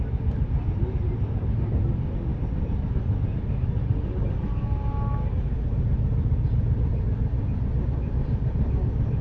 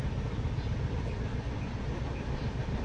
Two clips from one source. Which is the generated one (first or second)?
second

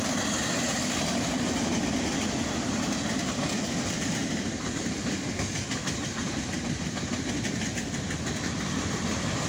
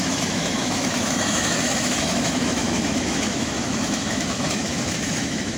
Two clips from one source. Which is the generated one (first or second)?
second